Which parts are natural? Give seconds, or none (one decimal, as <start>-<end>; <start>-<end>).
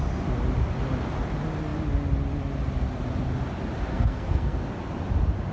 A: 0.0-3.9; 4.6-5.5